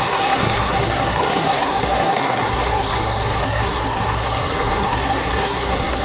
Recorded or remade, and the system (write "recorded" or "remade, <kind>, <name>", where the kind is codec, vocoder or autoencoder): remade, codec, SNAC